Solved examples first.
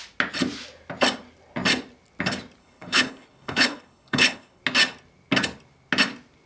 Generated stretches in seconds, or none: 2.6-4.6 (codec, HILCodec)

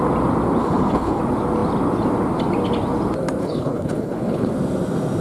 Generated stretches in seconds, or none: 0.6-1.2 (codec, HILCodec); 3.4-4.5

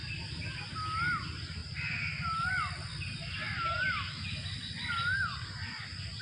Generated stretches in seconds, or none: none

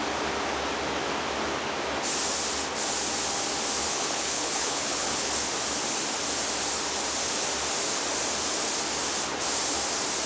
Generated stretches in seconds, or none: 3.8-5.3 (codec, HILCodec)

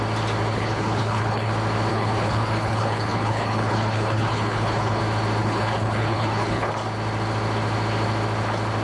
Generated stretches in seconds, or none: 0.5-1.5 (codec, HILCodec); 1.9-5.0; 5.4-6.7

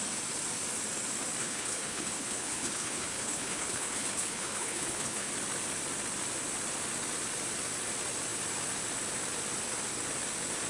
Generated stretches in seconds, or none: 1.4-5.3 (codec, HILCodec)